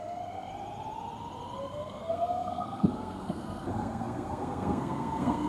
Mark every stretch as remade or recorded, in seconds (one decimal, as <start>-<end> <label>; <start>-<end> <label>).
0.0-0.5 remade; 0.5-1.6 recorded; 1.6-5.5 remade